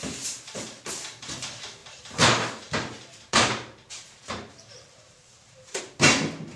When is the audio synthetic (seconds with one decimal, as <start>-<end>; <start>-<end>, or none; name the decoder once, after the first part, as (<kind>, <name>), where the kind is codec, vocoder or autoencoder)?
1.8-5.8 (vocoder, BigVGAN v2)